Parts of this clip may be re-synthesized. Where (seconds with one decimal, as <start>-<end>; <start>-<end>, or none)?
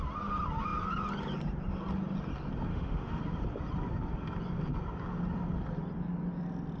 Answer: 2.7-3.2